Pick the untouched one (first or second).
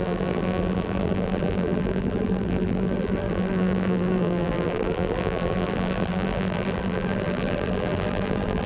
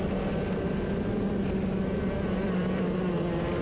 second